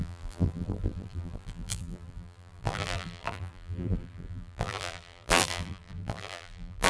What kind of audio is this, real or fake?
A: fake